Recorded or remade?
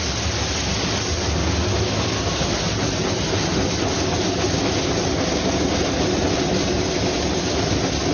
recorded